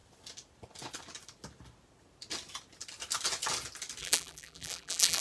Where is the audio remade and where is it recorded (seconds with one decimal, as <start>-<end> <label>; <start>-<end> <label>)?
0.0-4.0 recorded; 4.0-5.2 remade